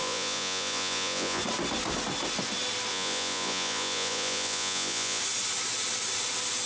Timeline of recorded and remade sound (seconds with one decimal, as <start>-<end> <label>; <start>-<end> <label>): 0.0-1.4 remade; 1.4-2.9 recorded; 2.9-5.2 remade; 5.2-6.7 recorded